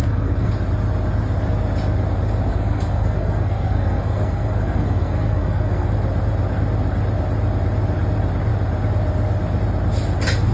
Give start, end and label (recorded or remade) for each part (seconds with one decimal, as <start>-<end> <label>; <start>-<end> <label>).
0.0-0.5 remade; 0.5-2.5 recorded; 2.5-5.9 remade; 5.9-10.5 recorded